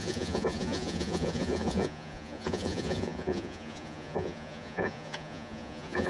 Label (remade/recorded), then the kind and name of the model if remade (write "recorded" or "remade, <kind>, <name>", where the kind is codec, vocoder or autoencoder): remade, vocoder, Vocos